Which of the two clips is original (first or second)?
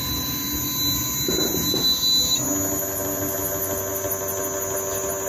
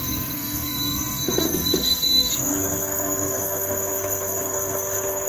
first